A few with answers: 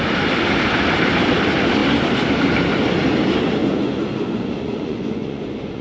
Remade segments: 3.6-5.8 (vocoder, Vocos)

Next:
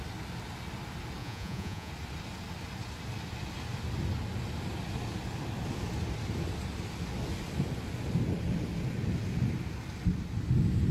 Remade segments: 1.2-1.9 (vocoder, Vocos)

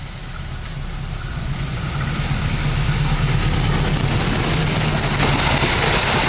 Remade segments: 1.3-1.8 (vocoder, Vocos)

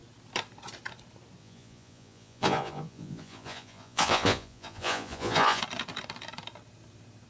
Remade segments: 1.4-5.6 (vocoder, Vocos)

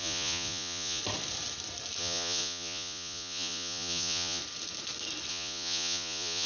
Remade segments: 0.0-1.0 (vocoder, Vocos); 2.0-4.4; 5.3-6.5

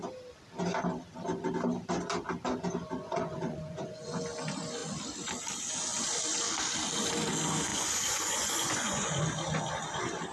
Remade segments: 2.9-4.2 (vocoder, Vocos); 7.7-9.2